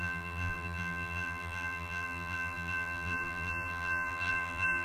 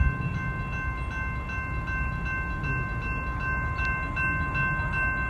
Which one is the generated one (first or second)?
first